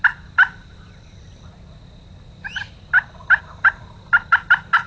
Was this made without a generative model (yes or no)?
yes